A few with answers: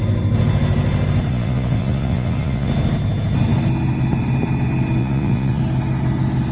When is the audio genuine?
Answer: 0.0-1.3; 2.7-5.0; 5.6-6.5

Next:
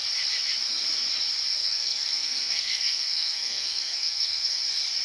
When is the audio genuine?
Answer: 0.0-1.6; 4.6-5.0

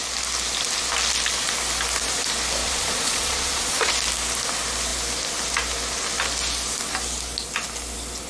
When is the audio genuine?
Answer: 0.0-2.6; 3.9-8.3

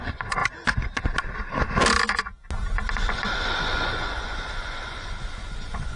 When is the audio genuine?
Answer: 0.4-2.9

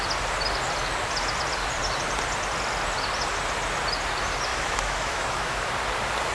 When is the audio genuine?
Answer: 0.0-4.5; 5.7-6.3

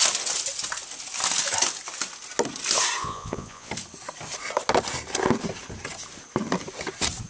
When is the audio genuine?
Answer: 0.0-3.0; 3.7-7.3

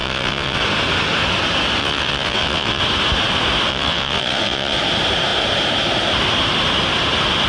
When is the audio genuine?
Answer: 0.6-1.8; 2.8-3.7; 4.8-7.5